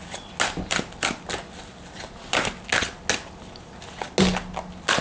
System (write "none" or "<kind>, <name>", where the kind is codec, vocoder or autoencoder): none